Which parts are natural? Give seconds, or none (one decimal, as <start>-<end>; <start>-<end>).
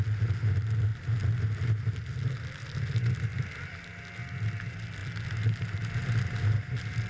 0.0-0.9; 1.9-3.3; 3.8-7.1